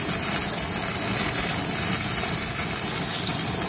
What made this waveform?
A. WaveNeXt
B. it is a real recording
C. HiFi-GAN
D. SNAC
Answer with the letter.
B